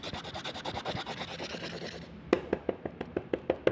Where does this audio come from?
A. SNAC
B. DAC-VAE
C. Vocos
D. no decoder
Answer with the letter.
D